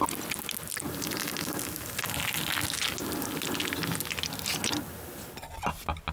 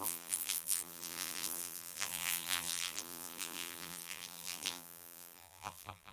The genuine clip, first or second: first